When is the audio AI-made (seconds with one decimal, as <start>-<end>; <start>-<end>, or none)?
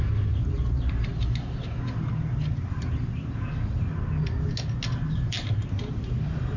0.0-1.1; 5.1-6.6